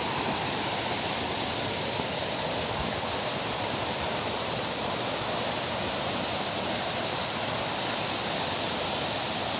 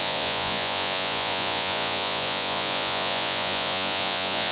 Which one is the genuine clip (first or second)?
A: first